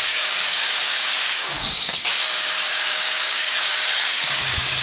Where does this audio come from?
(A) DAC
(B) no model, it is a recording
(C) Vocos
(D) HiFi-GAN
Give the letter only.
A